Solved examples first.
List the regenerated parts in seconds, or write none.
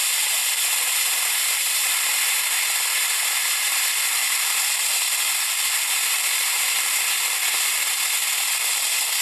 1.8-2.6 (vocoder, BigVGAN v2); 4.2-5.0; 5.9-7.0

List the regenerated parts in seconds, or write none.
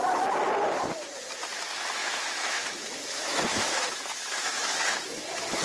2.0-5.6 (autoencoder, DAC-VAE)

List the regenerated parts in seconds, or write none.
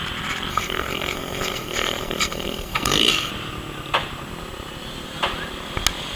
0.5-3.3 (codec, SNAC)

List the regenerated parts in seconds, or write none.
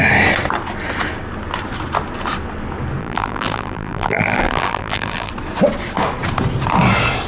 3.0-5.3 (vocoder, BigVGAN v2)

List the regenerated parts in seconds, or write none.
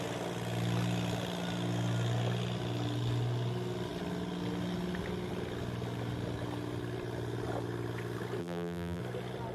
8.4-9.0 (vocoder, BigVGAN v2)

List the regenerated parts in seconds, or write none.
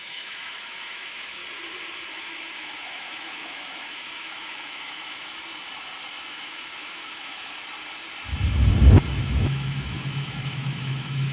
0.0-1.4 (autoencoder, DAC-VAE); 2.1-5.3; 6.3-7.6; 9.2-11.3